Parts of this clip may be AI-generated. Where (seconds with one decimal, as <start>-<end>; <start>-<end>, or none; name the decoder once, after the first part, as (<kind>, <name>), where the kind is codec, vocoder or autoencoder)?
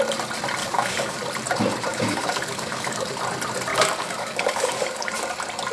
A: 0.6-1.2 (codec, DAC); 1.9-3.0; 3.7-5.1